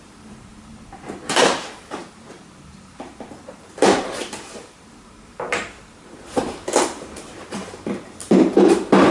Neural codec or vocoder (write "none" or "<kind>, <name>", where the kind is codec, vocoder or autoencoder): vocoder, BigVGAN v2